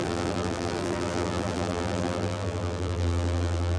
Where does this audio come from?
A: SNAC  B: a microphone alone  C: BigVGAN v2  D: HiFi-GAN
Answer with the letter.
C